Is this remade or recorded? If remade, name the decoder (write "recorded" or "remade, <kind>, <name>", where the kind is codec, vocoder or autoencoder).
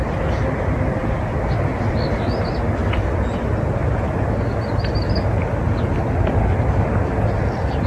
recorded